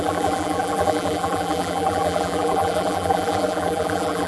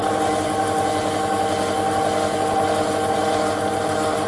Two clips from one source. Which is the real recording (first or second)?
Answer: second